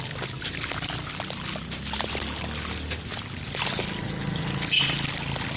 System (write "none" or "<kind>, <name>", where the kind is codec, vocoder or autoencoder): none